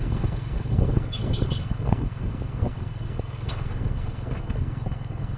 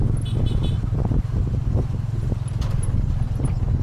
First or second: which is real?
second